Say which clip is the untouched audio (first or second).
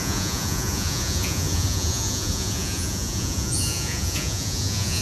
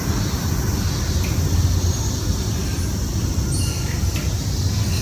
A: second